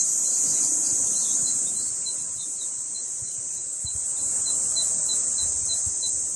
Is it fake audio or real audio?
real